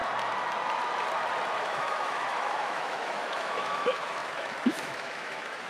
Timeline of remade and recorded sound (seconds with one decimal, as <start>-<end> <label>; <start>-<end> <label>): 0.0-1.6 recorded; 1.6-5.7 remade

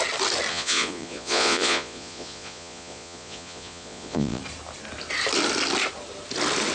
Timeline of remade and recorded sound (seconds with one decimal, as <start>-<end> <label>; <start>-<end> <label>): 0.0-0.5 recorded; 0.5-4.4 remade; 4.4-6.7 recorded

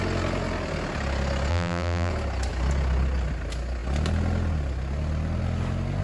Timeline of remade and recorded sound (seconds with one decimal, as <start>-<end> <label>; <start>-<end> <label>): 0.0-1.5 recorded; 1.5-2.1 remade; 2.1-6.0 recorded

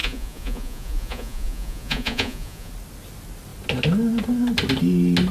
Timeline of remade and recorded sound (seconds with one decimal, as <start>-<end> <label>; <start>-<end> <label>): 0.0-2.7 remade; 2.7-5.3 recorded

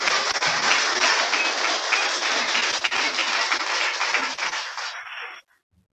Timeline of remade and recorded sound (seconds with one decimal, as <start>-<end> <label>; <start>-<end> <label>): 0.0-3.2 recorded; 3.2-3.7 remade; 3.7-5.9 recorded